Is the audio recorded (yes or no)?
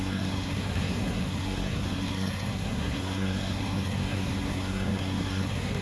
no